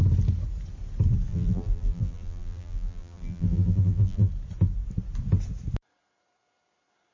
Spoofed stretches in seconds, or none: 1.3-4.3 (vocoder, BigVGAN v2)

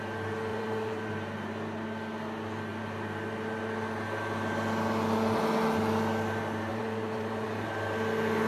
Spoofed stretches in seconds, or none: 0.5-1.1 (vocoder, BigVGAN v2); 6.7-7.7

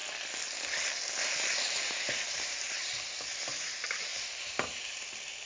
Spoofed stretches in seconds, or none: 3.3-5.5 (vocoder, BigVGAN v2)

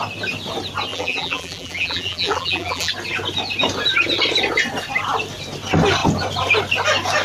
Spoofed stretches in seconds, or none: 0.9-2.9 (vocoder, BigVGAN v2)

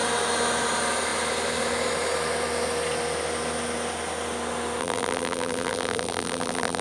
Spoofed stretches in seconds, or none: 4.8-6.8 (vocoder, BigVGAN v2)

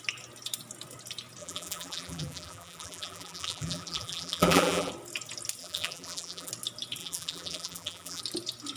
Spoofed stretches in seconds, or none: 1.4-4.9 (vocoder, BigVGAN v2); 5.6-6.5; 7.0-8.2